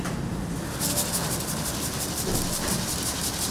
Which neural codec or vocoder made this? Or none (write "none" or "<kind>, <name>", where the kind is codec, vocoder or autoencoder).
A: none